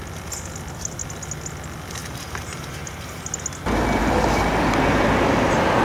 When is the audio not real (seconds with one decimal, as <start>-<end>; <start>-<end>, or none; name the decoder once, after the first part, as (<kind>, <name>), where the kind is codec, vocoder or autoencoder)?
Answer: 2.0-3.2 (vocoder, BigVGAN v2); 4.0-5.0